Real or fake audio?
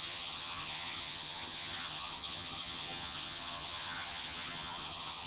fake